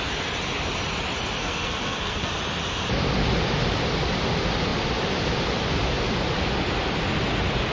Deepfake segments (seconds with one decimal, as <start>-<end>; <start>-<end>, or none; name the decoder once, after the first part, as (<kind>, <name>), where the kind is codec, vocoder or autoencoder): 1.4-2.3 (codec, SNAC)